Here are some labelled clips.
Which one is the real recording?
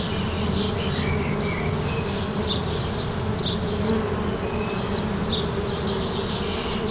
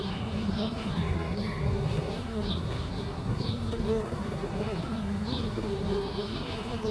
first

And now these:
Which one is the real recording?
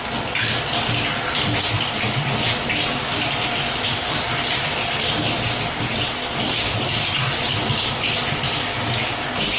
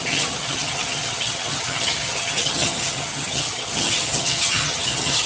first